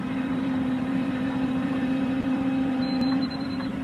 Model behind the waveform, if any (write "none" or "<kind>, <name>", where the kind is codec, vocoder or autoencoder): vocoder, BigVGAN v2